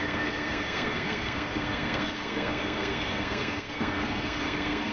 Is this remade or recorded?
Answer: remade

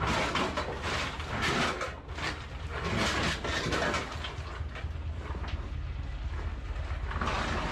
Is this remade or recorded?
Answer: recorded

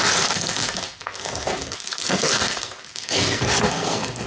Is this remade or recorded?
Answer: remade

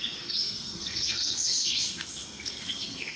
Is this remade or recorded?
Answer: remade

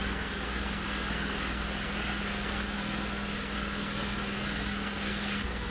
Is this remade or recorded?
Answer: remade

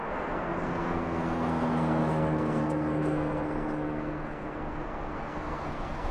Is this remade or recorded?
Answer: remade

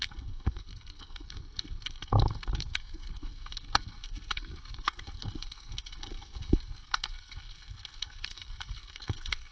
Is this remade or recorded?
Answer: remade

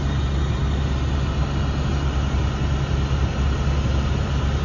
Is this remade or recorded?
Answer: recorded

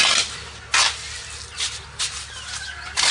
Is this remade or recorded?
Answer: recorded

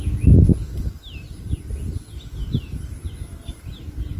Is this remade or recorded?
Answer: recorded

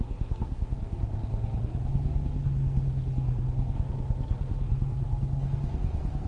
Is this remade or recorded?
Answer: remade